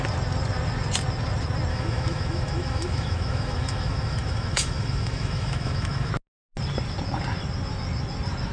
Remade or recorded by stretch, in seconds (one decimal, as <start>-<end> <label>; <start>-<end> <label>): 0.0-1.7 recorded; 1.7-6.1 remade; 6.1-8.5 recorded